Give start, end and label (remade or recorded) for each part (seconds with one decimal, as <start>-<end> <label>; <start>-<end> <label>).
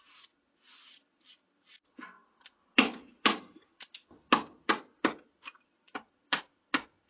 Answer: 0.0-7.1 recorded